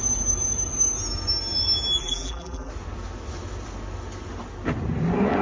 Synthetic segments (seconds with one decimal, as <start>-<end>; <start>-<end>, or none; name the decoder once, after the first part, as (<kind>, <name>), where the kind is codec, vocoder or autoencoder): 2.0-2.7 (vocoder, BigVGAN v2)